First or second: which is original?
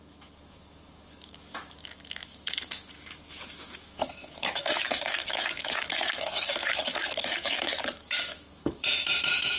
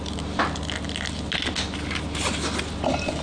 second